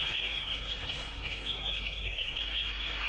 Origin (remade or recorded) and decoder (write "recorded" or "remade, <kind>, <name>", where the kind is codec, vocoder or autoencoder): remade, codec, SNAC